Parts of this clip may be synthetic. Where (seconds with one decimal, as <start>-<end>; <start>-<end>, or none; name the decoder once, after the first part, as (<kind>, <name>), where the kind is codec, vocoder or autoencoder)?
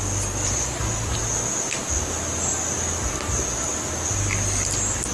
none